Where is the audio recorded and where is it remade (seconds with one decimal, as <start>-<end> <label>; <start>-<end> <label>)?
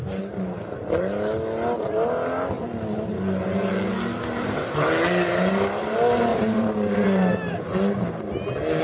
0.0-6.3 recorded; 6.3-7.5 remade; 7.5-8.8 recorded